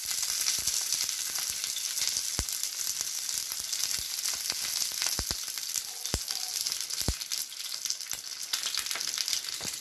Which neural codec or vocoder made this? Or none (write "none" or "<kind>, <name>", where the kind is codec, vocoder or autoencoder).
none